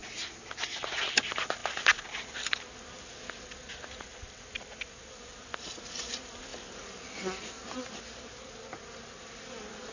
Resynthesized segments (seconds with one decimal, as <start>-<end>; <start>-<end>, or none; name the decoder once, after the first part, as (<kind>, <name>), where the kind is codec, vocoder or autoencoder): none